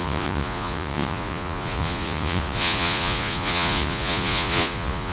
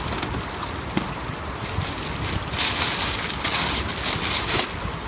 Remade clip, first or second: first